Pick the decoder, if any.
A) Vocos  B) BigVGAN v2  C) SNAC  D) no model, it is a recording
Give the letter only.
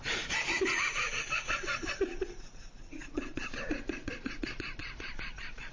A